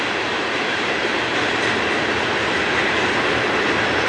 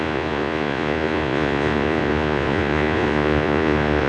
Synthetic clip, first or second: second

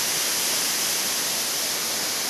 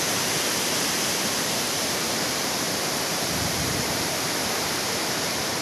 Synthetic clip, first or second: second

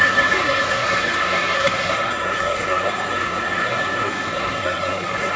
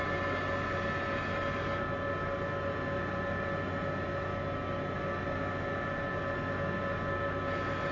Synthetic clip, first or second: first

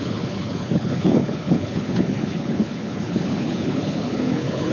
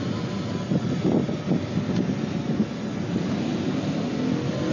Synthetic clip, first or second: first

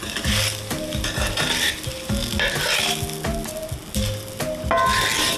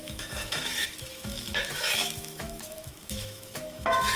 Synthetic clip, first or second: second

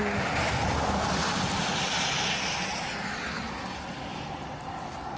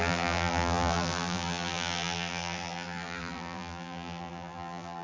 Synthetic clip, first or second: second